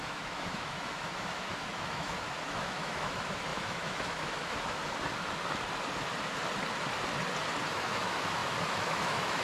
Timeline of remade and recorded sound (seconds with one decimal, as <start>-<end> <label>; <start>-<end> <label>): 0.0-4.8 remade; 4.8-7.7 recorded; 7.7-9.4 remade

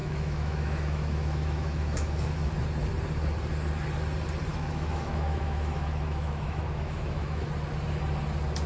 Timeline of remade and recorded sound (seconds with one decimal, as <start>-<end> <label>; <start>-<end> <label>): 0.0-2.5 remade; 2.5-4.5 recorded; 4.5-7.5 remade; 7.5-8.7 recorded

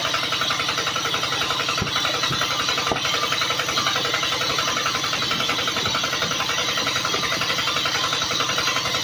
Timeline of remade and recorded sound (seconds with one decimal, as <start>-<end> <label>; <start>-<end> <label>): 0.0-9.0 recorded